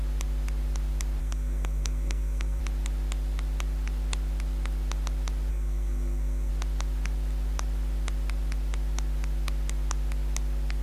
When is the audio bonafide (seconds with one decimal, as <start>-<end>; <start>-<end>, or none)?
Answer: 0.0-1.2; 2.6-5.5; 6.5-10.8